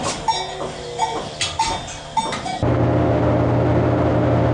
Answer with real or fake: real